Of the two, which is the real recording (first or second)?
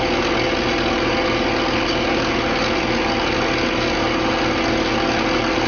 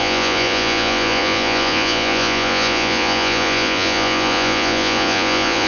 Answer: first